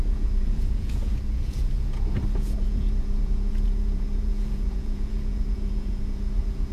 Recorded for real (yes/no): no